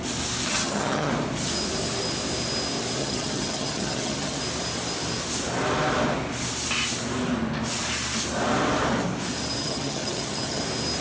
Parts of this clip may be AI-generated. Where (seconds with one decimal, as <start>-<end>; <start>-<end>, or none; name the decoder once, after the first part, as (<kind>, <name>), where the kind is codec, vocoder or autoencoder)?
0.5-1.1 (vocoder, HiFi-GAN); 3.0-4.4; 9.6-10.6